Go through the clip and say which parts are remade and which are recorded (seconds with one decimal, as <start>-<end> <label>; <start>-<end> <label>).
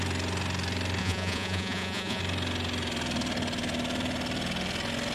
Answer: 0.0-1.0 recorded; 1.0-2.2 remade; 2.2-5.1 recorded